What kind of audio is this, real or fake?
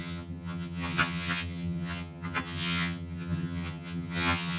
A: fake